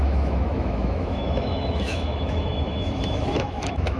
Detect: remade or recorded remade